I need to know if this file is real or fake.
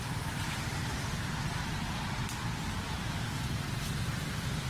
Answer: fake